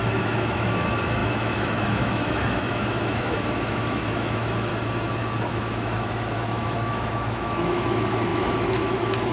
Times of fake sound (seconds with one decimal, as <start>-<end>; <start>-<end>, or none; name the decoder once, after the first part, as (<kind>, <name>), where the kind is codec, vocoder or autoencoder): 0.0-4.7 (autoencoder, DAC-VAE); 5.5-9.3